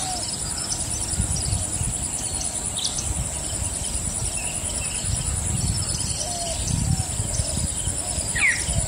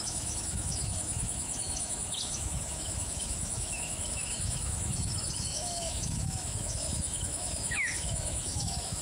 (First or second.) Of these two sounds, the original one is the first